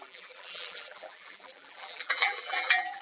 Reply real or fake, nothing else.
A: fake